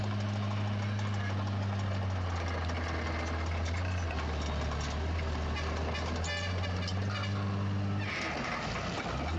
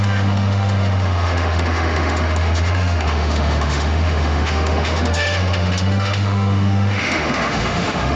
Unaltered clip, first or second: first